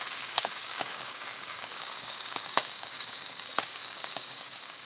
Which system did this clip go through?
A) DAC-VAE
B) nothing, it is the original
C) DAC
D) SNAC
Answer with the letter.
C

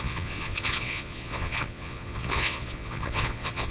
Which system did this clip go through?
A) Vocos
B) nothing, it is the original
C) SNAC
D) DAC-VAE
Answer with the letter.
A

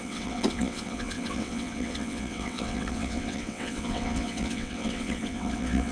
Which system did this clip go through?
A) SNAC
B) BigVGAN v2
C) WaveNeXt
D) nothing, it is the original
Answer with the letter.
C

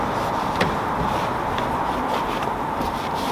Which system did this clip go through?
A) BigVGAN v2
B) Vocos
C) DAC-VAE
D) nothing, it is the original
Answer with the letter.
D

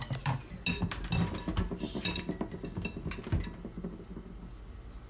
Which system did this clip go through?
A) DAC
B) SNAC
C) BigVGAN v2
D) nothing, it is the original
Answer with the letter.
D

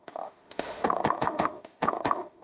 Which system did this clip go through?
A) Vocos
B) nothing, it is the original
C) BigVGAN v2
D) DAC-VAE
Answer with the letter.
D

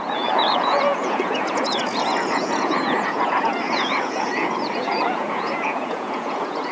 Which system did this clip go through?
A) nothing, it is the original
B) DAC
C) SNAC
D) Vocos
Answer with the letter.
D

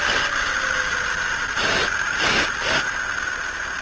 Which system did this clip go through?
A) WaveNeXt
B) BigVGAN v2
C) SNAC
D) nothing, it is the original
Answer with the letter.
D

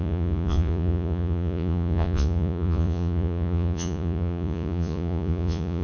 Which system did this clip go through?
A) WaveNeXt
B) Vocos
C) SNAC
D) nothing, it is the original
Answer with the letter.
B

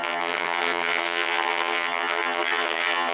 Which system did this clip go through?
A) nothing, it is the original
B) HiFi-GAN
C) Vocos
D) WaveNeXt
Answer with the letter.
B